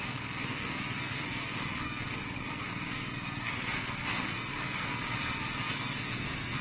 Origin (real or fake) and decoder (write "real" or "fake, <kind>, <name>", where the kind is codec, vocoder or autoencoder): fake, codec, SNAC